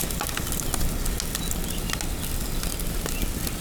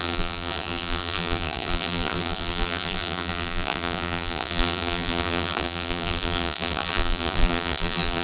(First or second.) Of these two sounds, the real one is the first